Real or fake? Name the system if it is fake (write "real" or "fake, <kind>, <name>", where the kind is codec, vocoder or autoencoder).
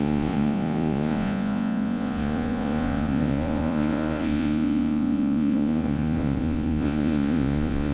fake, vocoder, Vocos